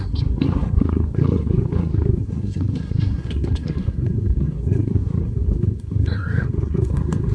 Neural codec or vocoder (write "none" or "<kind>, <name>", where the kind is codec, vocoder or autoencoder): codec, SNAC